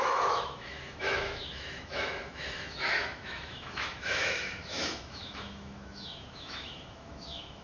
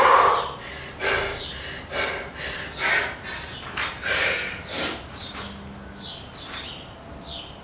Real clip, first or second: second